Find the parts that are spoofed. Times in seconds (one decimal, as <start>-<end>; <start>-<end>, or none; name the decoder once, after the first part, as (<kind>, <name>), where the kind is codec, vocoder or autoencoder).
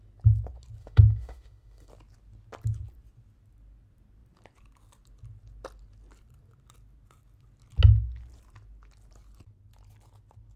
0.8-1.9 (autoencoder, DAC-VAE)